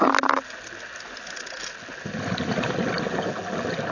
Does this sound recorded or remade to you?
recorded